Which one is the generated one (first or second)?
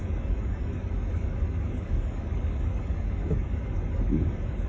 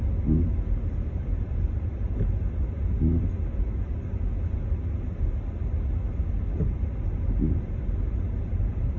first